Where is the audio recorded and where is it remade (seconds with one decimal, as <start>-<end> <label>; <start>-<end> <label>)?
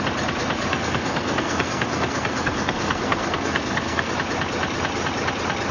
0.0-0.7 recorded; 0.7-4.1 remade; 4.1-5.7 recorded